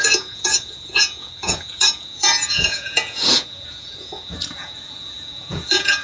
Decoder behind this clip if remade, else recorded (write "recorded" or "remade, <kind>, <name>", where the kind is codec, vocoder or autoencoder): remade, vocoder, Vocos